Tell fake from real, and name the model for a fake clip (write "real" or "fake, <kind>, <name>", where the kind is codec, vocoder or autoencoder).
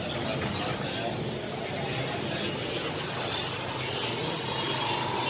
real